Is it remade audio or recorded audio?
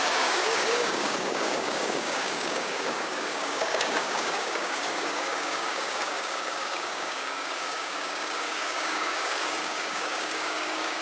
remade